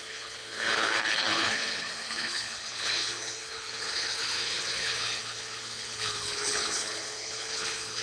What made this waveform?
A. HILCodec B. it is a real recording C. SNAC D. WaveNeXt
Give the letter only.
A